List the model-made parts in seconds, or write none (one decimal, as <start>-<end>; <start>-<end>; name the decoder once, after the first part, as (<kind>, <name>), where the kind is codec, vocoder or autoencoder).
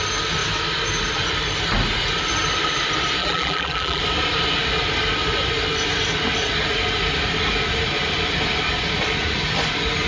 3.2-4.0 (vocoder, BigVGAN v2)